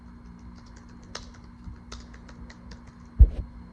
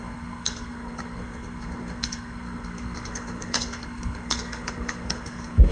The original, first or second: first